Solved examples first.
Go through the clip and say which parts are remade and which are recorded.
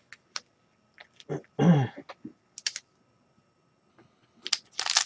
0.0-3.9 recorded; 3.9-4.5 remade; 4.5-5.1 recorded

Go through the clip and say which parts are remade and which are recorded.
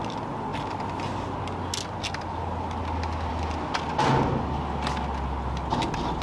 0.0-6.2 recorded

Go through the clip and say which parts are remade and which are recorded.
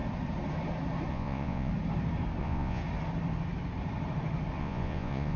0.0-1.1 recorded; 1.1-1.7 remade; 1.7-2.4 recorded; 2.4-2.8 remade; 2.8-4.6 recorded; 4.6-5.4 remade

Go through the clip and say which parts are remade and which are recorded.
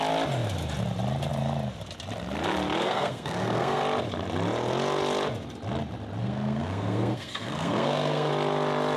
0.0-2.8 recorded; 2.8-3.8 remade; 3.8-6.2 recorded; 6.2-8.3 remade; 8.3-9.0 recorded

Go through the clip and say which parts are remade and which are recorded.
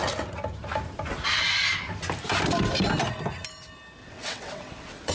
0.0-4.0 recorded; 4.0-5.1 remade